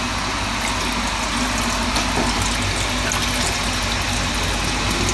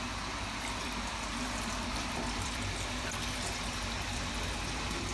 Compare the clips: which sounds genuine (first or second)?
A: first